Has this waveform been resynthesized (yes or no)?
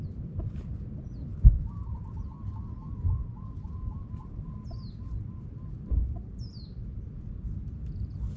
no